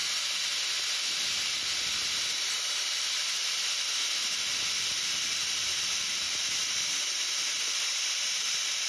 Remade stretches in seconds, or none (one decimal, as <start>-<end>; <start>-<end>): 2.5-8.9